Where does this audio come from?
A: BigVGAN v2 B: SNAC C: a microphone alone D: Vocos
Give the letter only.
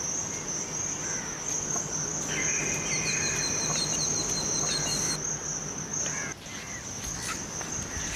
C